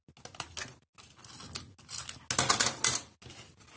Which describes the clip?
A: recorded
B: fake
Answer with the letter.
A